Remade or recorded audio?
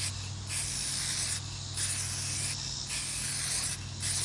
recorded